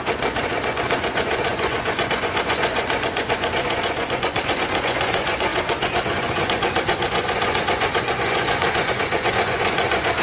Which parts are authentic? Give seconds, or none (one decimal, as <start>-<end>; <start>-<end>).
none